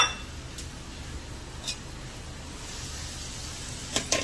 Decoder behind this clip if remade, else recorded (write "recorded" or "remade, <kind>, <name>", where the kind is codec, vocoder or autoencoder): recorded